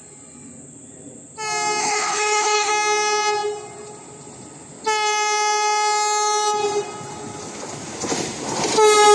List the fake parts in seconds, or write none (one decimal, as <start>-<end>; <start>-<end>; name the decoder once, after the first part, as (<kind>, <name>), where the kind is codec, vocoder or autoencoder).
1.8-2.7 (codec, HILCodec)